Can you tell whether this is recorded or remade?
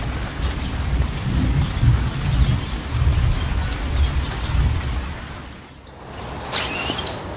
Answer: recorded